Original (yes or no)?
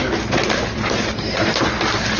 yes